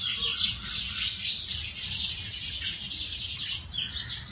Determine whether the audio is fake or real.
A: real